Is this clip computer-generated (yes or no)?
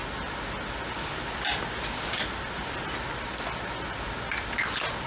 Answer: no